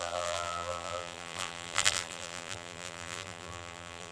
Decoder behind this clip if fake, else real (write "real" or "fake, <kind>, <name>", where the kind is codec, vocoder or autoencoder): fake, vocoder, BigVGAN v2